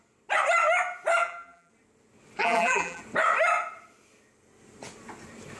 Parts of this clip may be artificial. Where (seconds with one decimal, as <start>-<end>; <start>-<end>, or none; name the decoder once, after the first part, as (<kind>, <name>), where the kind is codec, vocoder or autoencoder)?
1.2-1.7 (vocoder, BigVGAN v2); 2.4-3.0